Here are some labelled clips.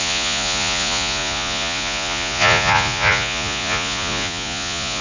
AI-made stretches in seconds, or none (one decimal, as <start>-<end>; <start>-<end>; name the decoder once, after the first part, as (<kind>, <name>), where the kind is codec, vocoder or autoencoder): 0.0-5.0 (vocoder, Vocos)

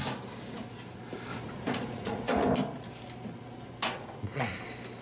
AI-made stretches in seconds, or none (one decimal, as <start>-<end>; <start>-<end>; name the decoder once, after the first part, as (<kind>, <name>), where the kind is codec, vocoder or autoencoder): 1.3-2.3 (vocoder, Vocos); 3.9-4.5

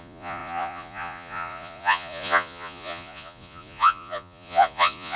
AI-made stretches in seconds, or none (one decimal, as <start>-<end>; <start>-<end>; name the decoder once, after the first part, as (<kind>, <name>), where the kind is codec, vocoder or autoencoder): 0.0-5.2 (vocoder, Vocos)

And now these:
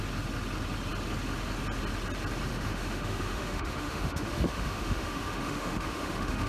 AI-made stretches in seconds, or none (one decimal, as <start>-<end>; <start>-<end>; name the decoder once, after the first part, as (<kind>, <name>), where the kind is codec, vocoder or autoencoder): 2.5-6.5 (autoencoder, DAC-VAE)